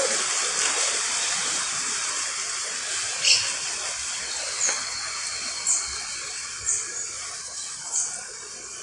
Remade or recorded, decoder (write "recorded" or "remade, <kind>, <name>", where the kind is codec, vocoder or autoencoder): recorded